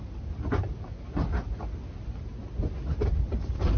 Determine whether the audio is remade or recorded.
recorded